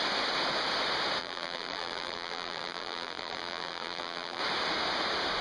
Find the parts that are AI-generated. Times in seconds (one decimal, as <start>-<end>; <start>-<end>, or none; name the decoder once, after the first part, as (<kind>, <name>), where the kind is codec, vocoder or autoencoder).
1.2-4.4 (vocoder, BigVGAN v2)